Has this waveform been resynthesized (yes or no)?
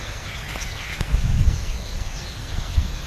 yes